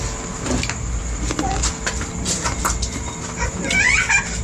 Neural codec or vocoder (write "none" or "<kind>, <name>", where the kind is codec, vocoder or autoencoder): none